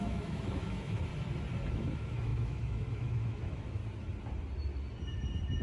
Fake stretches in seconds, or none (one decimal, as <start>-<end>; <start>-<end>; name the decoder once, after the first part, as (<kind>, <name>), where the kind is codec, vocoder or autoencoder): 0.0-1.1 (autoencoder, DAC-VAE); 1.7-3.8